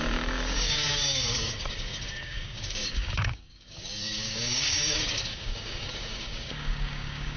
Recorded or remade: remade